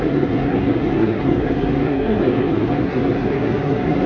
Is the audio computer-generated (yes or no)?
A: yes